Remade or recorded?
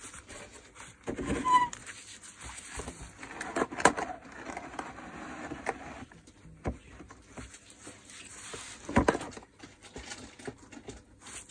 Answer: recorded